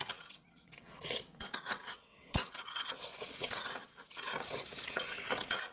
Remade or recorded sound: remade